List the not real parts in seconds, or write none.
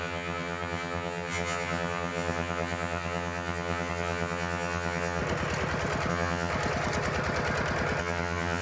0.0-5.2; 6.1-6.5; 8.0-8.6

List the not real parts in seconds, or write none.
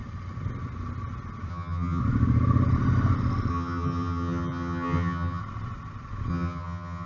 1.5-2.0; 3.5-5.4; 6.3-7.1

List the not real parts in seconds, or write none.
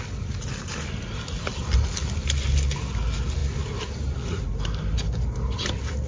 none